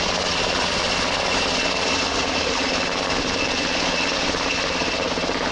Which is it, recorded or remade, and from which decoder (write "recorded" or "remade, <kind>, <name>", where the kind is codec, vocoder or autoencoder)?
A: recorded